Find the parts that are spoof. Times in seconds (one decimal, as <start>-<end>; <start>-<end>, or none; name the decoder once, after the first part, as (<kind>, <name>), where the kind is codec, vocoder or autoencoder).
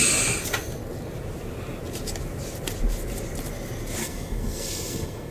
4.0-5.3 (codec, SNAC)